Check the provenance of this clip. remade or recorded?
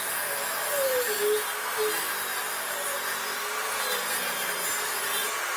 recorded